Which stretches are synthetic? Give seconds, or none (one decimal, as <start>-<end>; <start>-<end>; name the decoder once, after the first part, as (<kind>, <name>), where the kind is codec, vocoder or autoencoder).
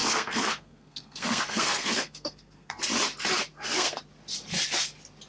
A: 0.0-2.8 (codec, SNAC); 3.5-4.0